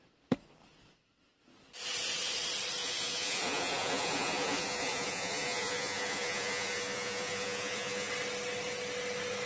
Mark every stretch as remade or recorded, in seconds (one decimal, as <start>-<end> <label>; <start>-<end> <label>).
0.0-2.8 recorded; 2.8-8.1 remade; 8.1-9.5 recorded